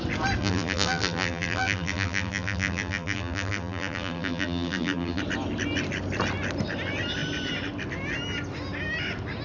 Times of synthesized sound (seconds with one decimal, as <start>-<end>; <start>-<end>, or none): 0.4-5.2